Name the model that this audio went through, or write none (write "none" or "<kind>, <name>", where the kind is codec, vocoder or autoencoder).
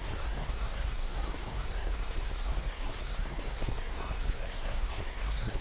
codec, SNAC